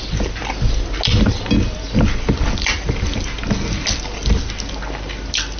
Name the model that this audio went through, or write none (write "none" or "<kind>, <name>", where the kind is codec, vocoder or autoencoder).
none